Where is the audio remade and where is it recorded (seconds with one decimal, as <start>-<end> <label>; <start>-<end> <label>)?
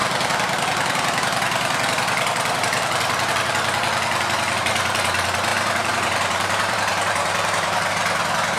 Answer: 0.0-3.3 remade; 3.3-5.5 recorded; 5.5-7.9 remade; 7.9-8.6 recorded